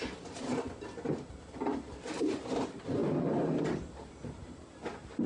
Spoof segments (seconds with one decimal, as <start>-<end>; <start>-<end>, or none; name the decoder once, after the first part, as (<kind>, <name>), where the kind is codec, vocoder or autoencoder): none